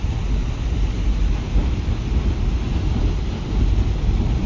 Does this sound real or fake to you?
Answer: real